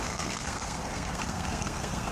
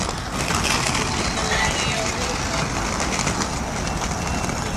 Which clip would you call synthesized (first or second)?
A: first